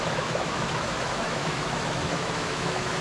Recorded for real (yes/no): no